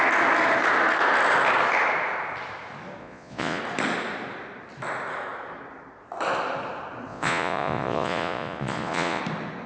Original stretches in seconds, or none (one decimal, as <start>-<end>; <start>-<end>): 0.0-3.0; 3.6-7.1; 9.2-9.7